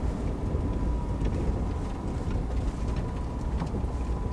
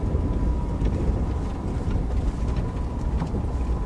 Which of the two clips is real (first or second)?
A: first